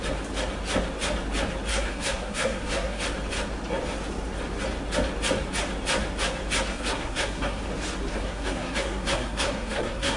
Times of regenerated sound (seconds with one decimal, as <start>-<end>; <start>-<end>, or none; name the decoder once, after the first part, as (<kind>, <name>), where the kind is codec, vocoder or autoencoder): 1.7-3.0 (codec, SNAC); 6.7-7.6; 8.1-10.2